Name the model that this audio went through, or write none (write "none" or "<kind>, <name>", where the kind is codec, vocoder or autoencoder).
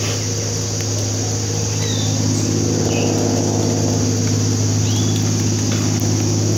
none